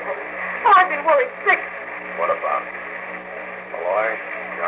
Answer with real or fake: real